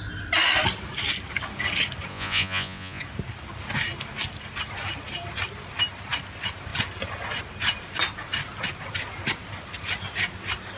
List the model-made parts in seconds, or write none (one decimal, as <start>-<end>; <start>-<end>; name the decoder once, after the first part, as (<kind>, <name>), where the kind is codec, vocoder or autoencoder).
2.1-3.0 (vocoder, Vocos)